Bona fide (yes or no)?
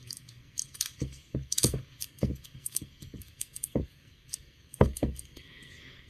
no